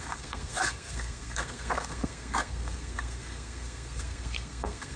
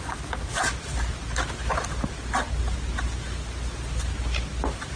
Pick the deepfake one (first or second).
first